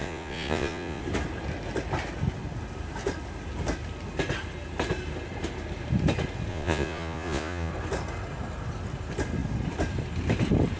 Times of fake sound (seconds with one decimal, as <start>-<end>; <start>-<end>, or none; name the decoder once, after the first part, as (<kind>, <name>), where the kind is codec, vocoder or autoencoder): 0.0-1.0 (vocoder, Vocos); 6.5-7.7